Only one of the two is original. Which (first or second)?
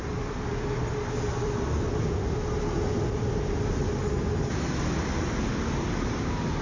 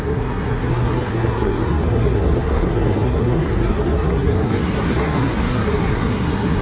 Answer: first